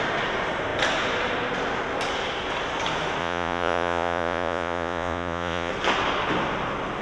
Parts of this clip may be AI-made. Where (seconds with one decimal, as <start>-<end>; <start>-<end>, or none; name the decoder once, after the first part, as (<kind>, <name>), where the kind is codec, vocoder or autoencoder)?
3.2-5.7 (vocoder, Vocos)